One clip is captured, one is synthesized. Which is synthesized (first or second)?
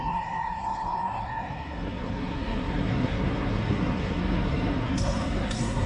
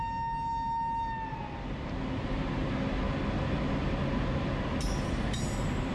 first